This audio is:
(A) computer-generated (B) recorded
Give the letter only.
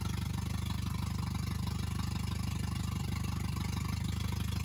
B